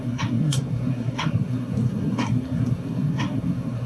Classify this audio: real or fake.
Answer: fake